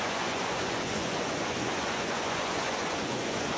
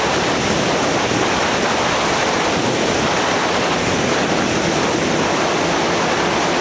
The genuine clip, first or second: second